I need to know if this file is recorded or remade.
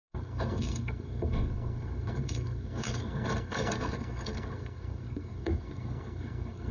remade